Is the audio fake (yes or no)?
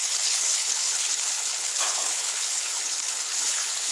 yes